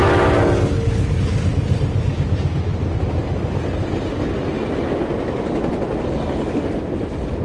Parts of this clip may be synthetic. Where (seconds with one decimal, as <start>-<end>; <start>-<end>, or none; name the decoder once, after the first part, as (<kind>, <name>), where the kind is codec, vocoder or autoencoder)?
none